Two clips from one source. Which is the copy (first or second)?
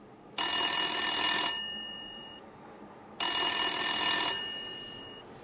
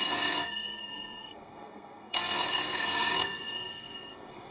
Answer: second